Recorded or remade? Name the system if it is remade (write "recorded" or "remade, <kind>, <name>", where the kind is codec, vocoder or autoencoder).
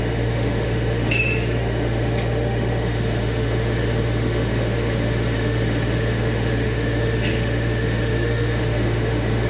remade, autoencoder, DAC-VAE